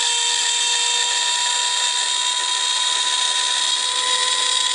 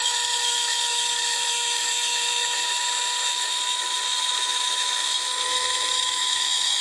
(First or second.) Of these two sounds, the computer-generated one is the second